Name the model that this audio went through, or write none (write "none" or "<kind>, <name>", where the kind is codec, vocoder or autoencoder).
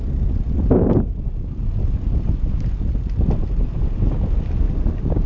none